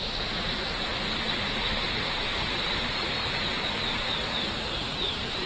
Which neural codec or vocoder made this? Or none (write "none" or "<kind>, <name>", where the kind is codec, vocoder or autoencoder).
vocoder, BigVGAN v2